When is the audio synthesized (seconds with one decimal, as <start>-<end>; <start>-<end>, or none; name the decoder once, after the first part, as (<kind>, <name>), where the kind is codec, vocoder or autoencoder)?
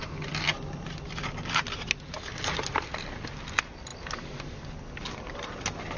none